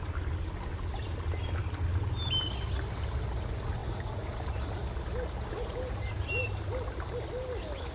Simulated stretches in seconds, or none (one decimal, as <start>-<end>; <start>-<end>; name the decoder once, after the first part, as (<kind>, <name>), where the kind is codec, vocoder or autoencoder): 3.8-4.7 (vocoder, BigVGAN v2)